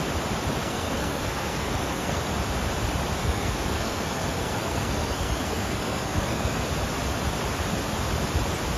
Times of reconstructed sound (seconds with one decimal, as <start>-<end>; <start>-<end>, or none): 0.6-2.2; 3.2-6.7